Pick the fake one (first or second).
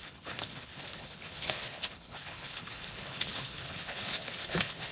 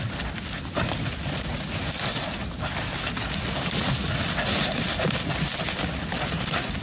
first